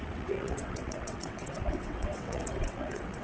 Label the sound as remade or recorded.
remade